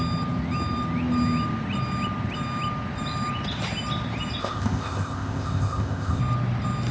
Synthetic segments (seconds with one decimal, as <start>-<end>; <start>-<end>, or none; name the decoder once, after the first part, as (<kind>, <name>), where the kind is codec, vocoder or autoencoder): 4.4-6.2 (codec, ZipCodec)